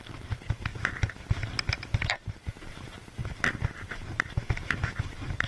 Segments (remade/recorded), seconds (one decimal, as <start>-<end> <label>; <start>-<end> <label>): 0.0-3.2 remade; 3.2-4.8 recorded; 4.8-5.5 remade